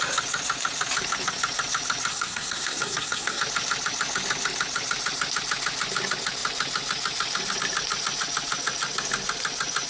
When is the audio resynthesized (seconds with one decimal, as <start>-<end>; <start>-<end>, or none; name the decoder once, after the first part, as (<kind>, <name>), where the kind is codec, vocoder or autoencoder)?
2.1-3.4 (codec, SNAC)